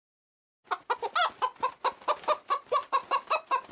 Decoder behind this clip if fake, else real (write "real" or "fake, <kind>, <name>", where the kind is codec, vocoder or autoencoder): real